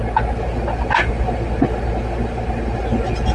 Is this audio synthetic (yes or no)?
no